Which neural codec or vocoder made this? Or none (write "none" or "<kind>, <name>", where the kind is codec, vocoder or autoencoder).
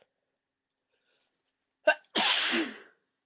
none